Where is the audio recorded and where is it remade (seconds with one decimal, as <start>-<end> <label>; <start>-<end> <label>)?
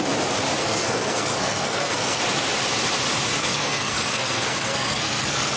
0.0-0.6 recorded; 0.6-2.2 remade; 2.2-3.4 recorded; 3.4-5.6 remade